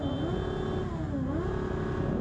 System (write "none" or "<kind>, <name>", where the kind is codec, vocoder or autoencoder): none